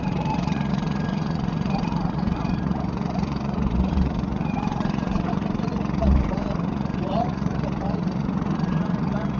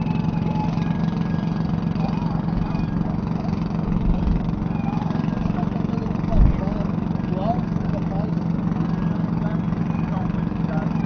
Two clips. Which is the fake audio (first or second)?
first